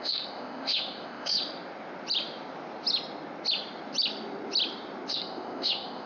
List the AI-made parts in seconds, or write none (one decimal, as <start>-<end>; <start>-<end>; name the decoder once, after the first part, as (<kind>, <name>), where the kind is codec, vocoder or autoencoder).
0.0-1.4 (codec, ZipCodec); 5.1-6.1